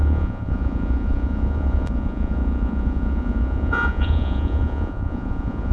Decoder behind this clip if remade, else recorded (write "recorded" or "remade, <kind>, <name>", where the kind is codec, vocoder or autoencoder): remade, vocoder, Vocos